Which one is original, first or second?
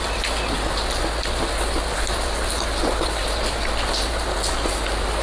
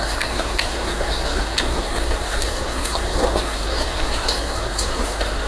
first